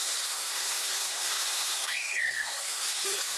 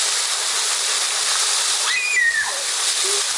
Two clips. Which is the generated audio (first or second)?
first